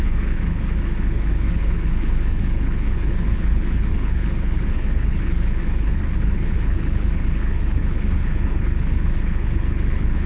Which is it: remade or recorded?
remade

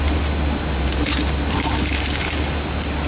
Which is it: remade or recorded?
recorded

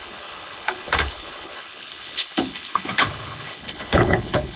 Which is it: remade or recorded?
remade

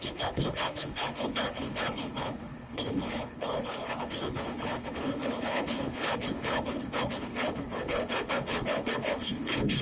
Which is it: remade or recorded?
remade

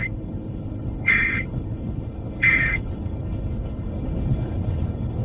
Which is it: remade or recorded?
remade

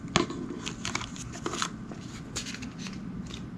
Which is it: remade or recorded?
recorded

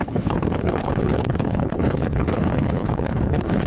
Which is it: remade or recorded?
remade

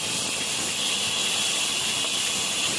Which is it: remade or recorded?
recorded